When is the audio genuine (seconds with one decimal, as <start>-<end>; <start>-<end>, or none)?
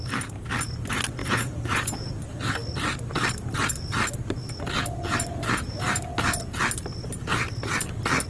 0.0-1.2; 2.1-8.3